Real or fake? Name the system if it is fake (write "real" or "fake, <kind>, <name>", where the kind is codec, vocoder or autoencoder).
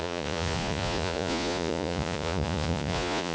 fake, vocoder, Vocos